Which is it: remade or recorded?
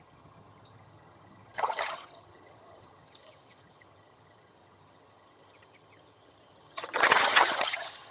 remade